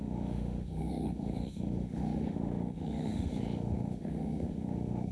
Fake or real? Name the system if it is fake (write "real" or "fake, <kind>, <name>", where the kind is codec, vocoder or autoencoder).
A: fake, autoencoder, DAC-VAE